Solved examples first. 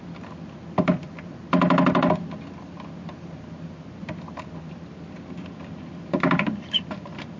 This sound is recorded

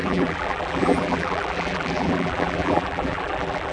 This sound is remade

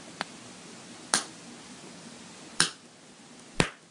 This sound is recorded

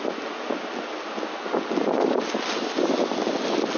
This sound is recorded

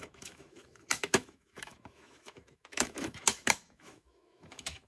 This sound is remade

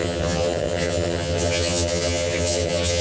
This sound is remade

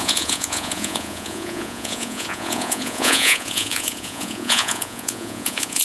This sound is remade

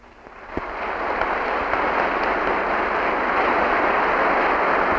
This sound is recorded